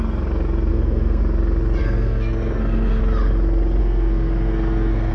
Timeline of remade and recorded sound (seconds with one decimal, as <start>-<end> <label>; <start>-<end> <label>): 0.0-0.7 recorded; 0.7-1.2 remade; 1.2-1.8 recorded; 1.8-3.0 remade; 3.0-3.8 recorded; 3.8-5.1 remade